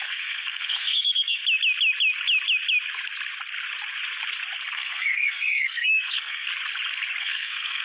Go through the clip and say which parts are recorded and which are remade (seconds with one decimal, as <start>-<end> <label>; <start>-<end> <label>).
0.0-1.4 remade; 1.4-4.7 recorded; 4.7-6.5 remade; 6.5-7.2 recorded; 7.2-7.8 remade